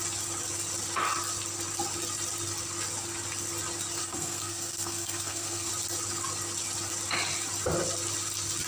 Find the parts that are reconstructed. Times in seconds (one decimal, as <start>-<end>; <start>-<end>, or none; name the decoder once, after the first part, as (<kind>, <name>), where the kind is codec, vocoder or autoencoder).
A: 4.0-5.7 (codec, SNAC)